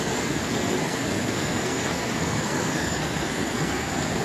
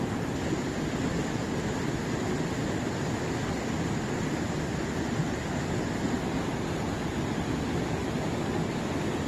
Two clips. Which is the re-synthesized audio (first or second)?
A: first